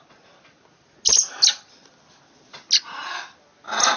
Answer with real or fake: real